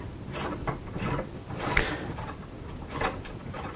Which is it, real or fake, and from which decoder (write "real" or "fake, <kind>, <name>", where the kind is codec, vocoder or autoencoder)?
real